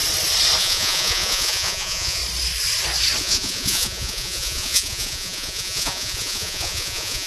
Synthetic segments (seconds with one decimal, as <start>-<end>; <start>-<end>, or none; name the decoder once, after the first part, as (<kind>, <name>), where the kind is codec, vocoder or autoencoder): 0.6-2.2 (vocoder, Vocos); 3.2-7.3